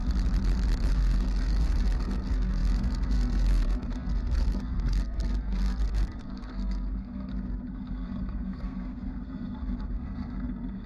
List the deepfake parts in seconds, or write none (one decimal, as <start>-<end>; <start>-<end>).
0.9-10.9